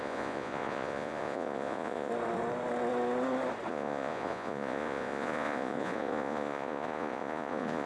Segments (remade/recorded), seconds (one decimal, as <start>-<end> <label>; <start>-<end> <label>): 0.0-2.1 remade; 2.1-3.7 recorded; 3.7-7.9 remade